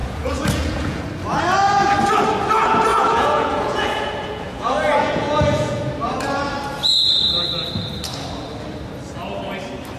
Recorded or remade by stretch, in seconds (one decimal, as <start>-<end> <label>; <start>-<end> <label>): 0.0-1.0 remade; 1.0-2.9 recorded; 2.9-5.8 remade; 5.8-10.0 recorded